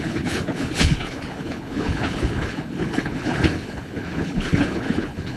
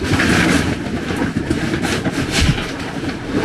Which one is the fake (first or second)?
first